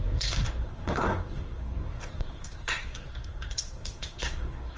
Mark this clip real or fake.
fake